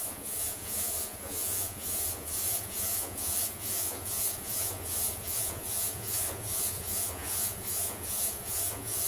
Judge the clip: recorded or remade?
remade